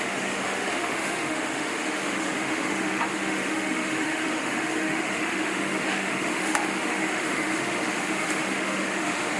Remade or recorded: remade